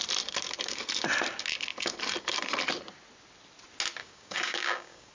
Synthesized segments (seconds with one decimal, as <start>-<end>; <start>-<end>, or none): 4.0-5.1